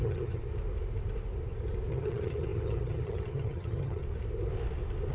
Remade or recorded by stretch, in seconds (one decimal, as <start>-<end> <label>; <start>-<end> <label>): 0.0-0.4 remade; 0.4-1.9 recorded; 1.9-4.0 remade; 4.0-5.1 recorded